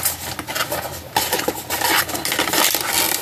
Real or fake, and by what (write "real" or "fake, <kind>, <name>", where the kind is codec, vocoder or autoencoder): real